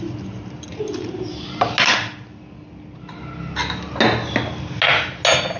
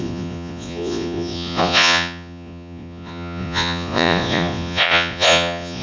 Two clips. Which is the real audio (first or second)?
first